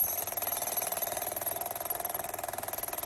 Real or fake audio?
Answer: real